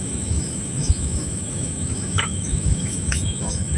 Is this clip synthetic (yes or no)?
yes